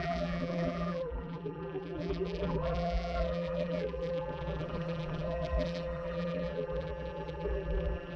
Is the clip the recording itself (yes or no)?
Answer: no